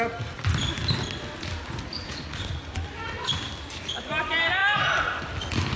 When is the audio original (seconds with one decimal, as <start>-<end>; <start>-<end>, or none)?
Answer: 0.0-1.9; 2.9-5.8